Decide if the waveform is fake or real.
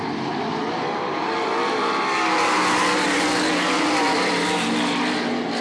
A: real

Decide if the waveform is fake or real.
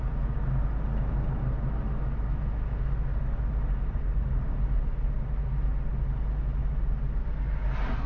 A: real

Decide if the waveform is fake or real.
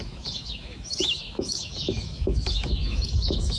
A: fake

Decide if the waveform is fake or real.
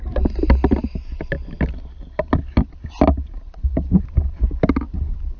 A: real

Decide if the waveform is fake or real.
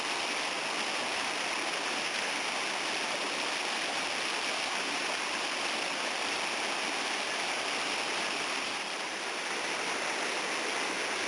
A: real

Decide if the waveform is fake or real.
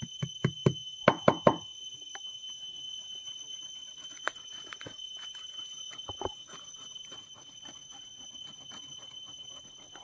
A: real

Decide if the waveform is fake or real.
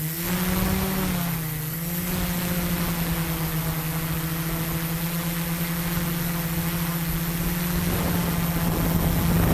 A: real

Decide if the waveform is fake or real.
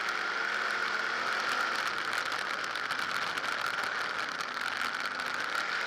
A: real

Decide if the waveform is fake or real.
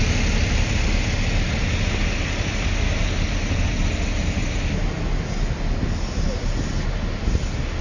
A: real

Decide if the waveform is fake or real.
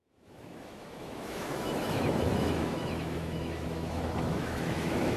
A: fake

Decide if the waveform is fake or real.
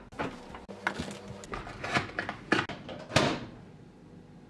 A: real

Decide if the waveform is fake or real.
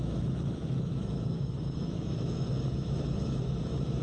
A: fake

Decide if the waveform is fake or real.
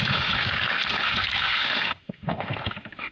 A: fake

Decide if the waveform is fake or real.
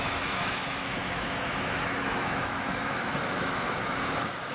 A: fake